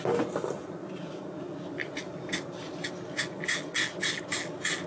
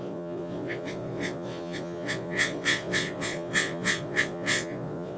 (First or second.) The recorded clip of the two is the first